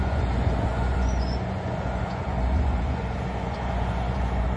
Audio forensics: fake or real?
fake